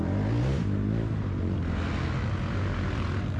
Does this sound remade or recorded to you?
recorded